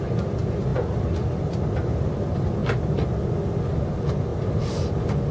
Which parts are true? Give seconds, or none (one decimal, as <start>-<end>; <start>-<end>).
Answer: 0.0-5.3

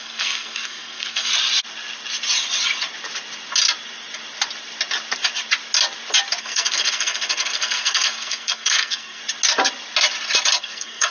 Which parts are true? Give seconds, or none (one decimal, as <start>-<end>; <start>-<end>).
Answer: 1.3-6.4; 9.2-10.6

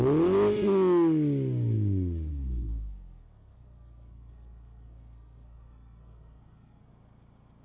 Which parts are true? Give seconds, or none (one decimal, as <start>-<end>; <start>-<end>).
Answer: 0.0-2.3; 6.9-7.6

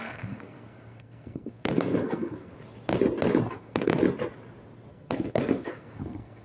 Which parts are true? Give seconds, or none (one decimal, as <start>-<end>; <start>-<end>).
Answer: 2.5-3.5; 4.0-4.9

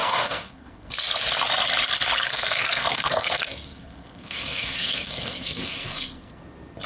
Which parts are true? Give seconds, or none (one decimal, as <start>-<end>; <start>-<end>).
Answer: 0.9-2.3; 6.4-6.9

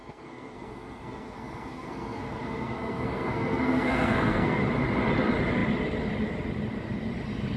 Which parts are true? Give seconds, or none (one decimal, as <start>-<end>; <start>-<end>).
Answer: 4.6-7.6